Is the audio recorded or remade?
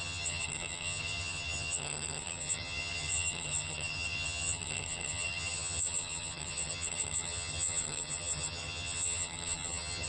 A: remade